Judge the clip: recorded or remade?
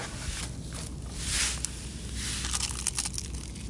recorded